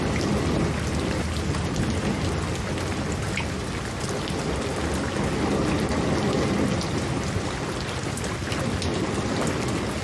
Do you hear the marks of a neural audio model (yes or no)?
no